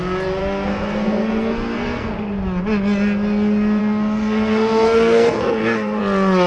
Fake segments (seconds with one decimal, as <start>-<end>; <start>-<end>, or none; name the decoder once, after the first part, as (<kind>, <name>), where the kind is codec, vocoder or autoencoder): 0.4-2.1 (codec, SNAC); 3.8-6.0